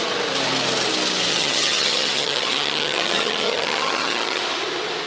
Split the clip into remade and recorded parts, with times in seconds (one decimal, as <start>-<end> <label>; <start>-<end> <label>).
0.0-1.3 recorded; 1.3-4.4 remade; 4.4-5.1 recorded